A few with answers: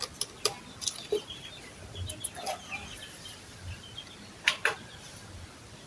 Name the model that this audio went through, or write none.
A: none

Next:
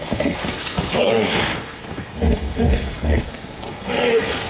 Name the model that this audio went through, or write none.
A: codec, SNAC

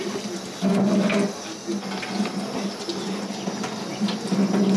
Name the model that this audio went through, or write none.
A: none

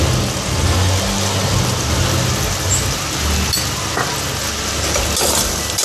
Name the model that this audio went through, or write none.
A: none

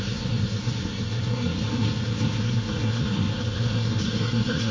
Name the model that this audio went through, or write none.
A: codec, SNAC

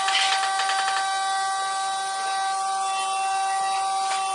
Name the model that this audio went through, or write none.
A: none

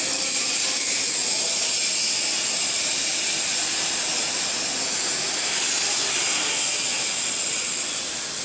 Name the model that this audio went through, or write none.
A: none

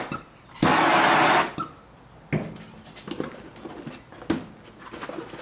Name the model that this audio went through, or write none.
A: none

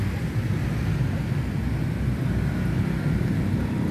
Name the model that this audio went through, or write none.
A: none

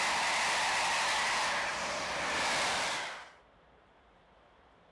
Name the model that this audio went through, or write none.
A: none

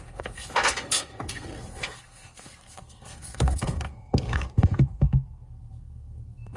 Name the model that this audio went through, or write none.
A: codec, SNAC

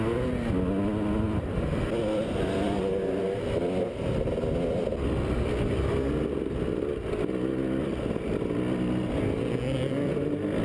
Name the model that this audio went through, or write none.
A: none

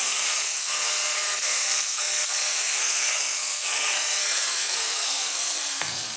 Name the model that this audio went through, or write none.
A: codec, SNAC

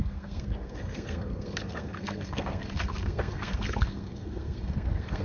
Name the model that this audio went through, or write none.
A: codec, SNAC